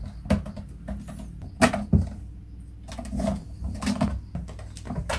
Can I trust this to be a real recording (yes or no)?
yes